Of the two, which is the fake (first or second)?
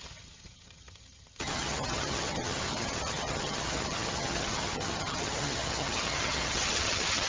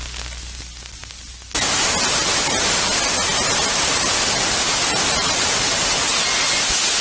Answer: first